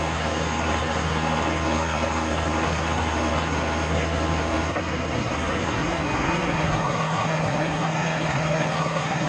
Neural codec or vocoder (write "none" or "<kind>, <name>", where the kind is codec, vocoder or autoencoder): codec, SNAC